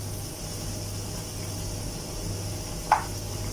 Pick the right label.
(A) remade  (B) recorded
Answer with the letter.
B